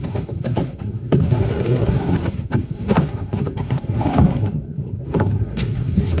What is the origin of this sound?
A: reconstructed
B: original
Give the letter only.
A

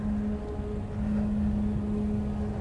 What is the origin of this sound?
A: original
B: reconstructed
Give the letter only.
A